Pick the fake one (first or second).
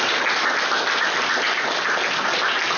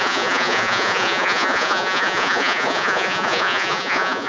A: second